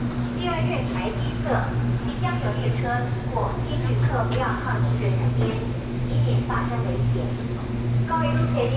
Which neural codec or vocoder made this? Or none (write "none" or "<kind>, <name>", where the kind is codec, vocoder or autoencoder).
none